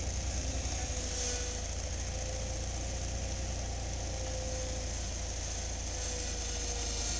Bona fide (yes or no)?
yes